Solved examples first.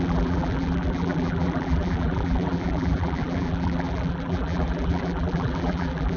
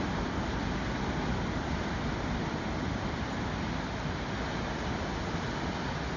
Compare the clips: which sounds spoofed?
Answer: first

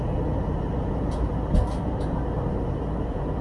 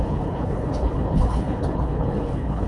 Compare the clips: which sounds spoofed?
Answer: second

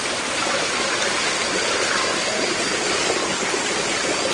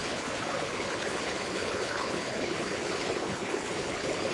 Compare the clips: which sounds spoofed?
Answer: second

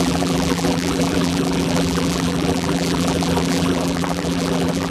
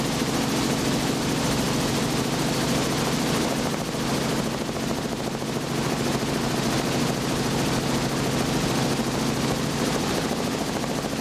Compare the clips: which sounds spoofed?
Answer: first